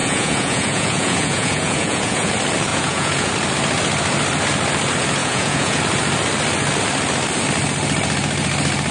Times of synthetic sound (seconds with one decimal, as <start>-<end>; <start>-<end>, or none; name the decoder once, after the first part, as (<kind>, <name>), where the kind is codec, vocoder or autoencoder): 0.0-2.3 (vocoder, Vocos); 2.7-3.3; 5.2-5.8